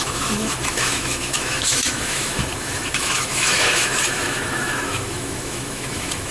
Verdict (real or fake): fake